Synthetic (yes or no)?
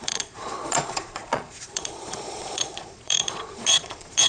yes